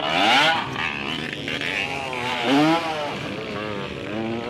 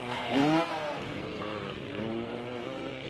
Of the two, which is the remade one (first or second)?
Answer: second